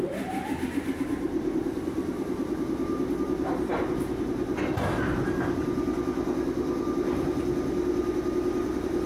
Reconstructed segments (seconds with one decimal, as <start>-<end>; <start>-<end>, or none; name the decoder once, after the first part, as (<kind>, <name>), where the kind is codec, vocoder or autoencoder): 0.0-3.7 (vocoder, BigVGAN v2); 8.6-9.1